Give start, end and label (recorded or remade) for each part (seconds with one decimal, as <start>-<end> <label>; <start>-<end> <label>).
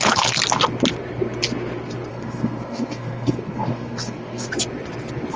0.0-2.1 recorded; 2.1-4.5 remade; 4.5-5.4 recorded